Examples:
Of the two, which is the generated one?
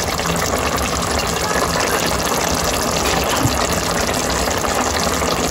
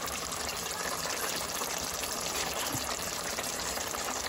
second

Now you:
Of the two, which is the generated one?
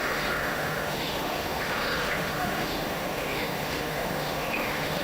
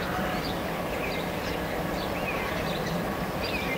first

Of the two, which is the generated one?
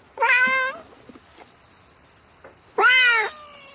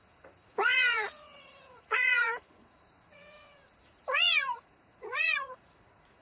second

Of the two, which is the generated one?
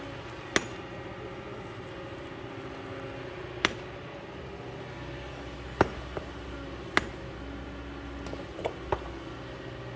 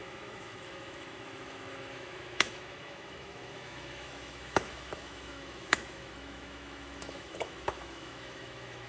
second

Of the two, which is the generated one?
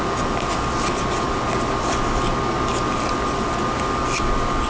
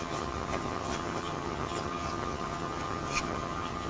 second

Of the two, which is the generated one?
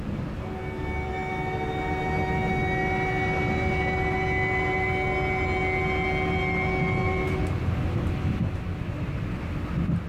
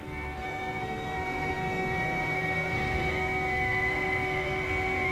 second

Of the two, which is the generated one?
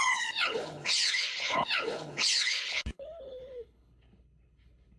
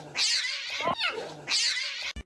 first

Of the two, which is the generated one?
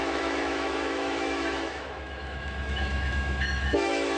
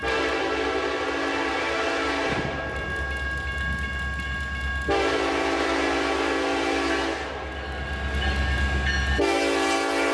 first